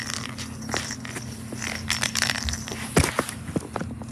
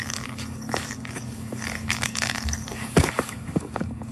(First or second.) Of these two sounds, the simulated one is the second